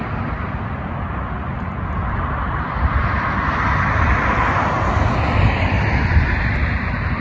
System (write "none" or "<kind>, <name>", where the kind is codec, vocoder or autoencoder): vocoder, BigVGAN v2